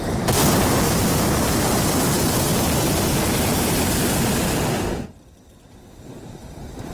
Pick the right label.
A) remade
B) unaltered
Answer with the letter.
A